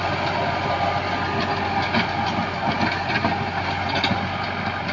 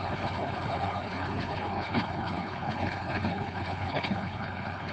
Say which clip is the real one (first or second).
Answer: first